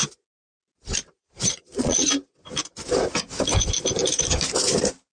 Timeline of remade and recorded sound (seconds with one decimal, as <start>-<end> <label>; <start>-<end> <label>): 0.0-1.2 recorded; 1.2-2.1 remade; 2.1-5.2 recorded